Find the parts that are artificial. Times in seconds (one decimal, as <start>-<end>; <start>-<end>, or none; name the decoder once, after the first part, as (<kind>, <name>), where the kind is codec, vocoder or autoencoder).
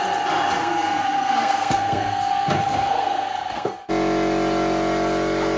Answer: 0.6-3.9 (codec, SNAC)